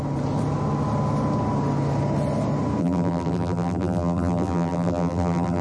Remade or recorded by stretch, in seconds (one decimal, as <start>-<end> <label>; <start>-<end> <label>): 0.0-2.8 recorded; 2.8-5.6 remade